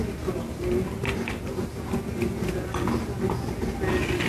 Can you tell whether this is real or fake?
real